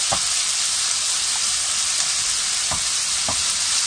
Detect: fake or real real